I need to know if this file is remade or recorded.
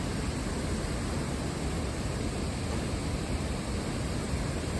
recorded